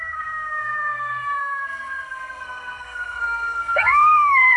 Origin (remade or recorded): remade